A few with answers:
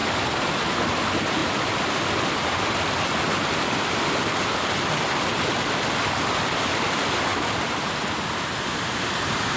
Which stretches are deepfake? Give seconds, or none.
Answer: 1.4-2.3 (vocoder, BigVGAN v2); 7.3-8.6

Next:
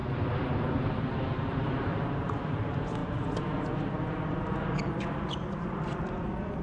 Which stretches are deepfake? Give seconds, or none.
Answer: 0.0-3.0 (vocoder, BigVGAN v2); 4.8-6.6